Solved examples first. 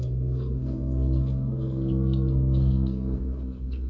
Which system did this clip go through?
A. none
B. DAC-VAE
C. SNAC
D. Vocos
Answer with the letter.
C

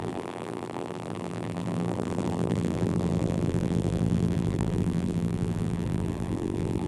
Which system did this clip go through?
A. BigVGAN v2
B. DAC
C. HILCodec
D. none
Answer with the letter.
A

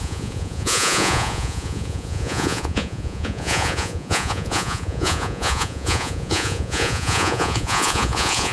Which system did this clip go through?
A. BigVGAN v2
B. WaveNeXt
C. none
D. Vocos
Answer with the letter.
D